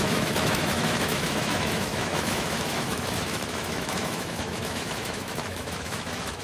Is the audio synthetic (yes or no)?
yes